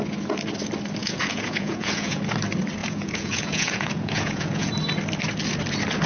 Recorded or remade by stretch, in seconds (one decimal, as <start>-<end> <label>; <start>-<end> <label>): 0.0-1.0 recorded; 1.0-2.2 remade; 2.2-2.8 recorded; 2.8-4.7 remade; 4.7-6.1 recorded